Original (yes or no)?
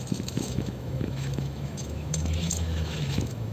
no